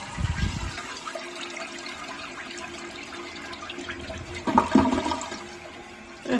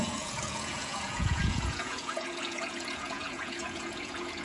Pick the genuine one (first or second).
first